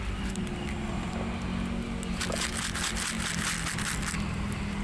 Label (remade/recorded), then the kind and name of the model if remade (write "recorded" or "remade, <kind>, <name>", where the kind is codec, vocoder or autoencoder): recorded